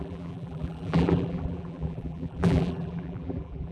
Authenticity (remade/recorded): remade